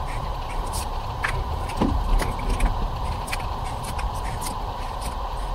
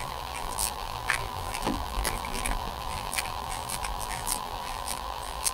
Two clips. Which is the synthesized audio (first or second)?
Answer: second